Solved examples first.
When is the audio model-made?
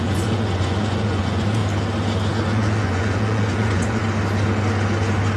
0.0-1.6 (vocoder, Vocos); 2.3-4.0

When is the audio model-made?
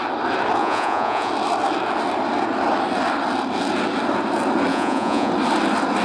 0.6-1.3 (vocoder, Vocos); 4.7-5.3